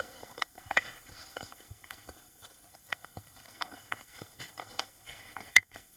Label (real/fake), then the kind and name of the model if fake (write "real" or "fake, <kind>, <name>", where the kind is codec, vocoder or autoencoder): fake, codec, SNAC